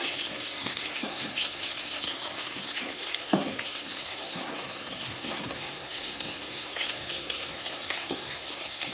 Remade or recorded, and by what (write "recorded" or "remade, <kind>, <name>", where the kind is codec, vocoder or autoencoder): remade, codec, SNAC